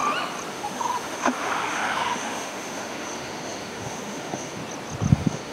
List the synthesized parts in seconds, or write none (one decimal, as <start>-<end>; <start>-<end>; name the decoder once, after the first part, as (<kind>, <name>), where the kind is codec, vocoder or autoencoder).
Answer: 0.5-4.6 (autoencoder, DAC-VAE); 5.1-5.5